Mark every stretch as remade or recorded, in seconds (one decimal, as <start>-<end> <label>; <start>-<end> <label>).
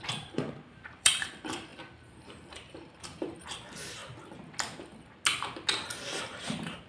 0.0-1.7 remade; 1.7-2.5 recorded; 2.5-4.0 remade; 4.0-6.5 recorded; 6.5-6.9 remade